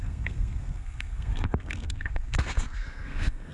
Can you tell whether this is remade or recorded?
remade